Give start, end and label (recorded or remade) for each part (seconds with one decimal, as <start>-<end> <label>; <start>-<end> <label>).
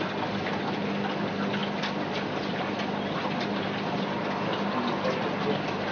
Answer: 0.0-5.9 recorded